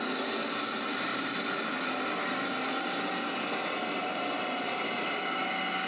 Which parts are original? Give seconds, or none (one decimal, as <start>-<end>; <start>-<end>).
0.0-1.1; 1.7-4.0; 5.4-5.9